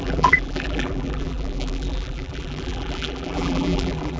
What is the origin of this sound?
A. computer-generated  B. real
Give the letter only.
A